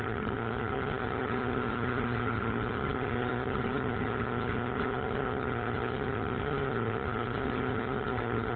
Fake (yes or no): yes